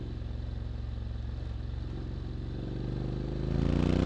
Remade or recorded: recorded